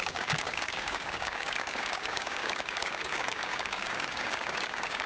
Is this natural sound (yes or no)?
no